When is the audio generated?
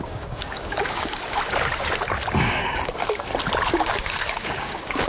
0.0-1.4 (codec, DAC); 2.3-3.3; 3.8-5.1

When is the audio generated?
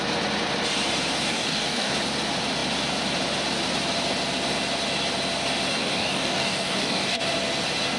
1.3-1.9 (codec, DAC); 5.7-7.2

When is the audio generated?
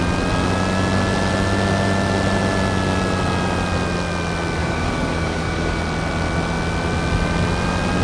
4.6-5.8 (codec, DAC)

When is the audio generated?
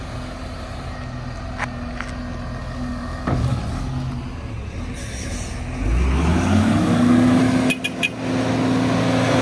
2.6-3.6 (codec, DAC); 6.3-7.4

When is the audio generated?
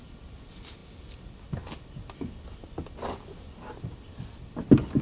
none